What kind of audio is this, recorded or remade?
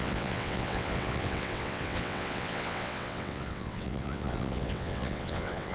remade